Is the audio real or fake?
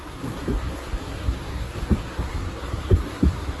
fake